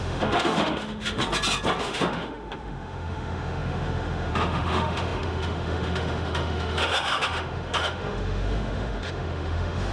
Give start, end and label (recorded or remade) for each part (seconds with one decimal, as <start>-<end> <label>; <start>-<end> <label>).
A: 0.0-1.2 remade; 1.2-1.8 recorded; 1.8-9.9 remade